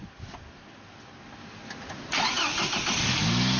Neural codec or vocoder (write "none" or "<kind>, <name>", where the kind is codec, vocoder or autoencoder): none